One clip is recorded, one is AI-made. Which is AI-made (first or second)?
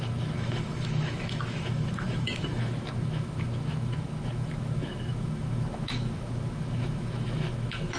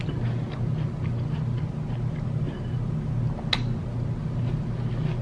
first